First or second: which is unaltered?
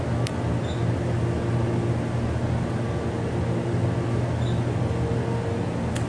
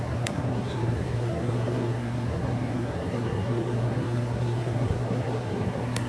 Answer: first